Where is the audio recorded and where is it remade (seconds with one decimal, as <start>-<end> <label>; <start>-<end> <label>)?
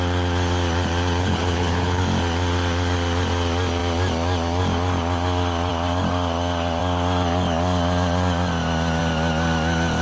0.0-1.2 recorded; 1.2-2.0 remade; 2.0-10.0 recorded